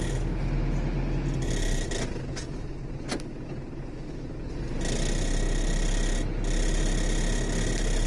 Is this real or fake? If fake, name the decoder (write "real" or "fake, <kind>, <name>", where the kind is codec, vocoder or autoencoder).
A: real